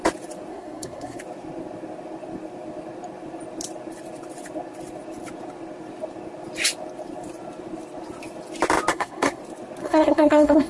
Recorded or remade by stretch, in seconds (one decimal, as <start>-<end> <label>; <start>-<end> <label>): 0.0-0.5 recorded; 0.5-1.2 remade; 1.2-8.9 recorded; 8.9-9.4 remade; 9.4-9.8 recorded; 9.8-10.7 remade